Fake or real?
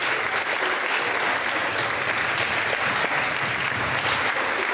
real